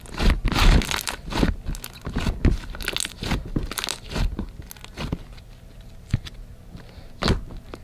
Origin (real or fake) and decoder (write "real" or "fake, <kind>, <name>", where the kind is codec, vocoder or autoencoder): real